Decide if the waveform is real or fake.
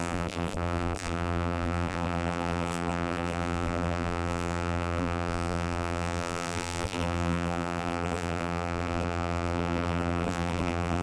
fake